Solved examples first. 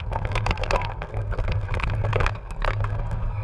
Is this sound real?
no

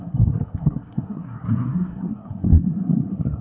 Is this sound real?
no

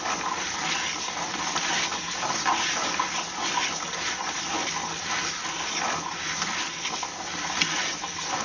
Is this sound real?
yes